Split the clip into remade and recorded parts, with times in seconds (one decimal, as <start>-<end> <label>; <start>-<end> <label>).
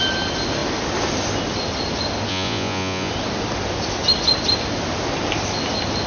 0.0-2.3 recorded; 2.3-3.1 remade; 3.1-6.1 recorded